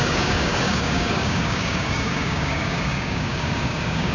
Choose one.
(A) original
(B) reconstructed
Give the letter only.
B